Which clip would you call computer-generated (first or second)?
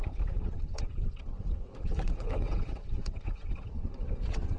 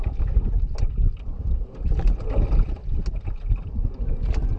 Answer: first